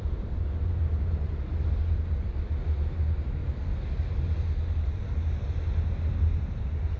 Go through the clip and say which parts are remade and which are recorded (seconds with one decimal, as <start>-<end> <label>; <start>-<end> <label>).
0.0-1.5 remade; 1.5-3.0 recorded; 3.0-3.4 remade; 3.4-6.1 recorded; 6.1-7.0 remade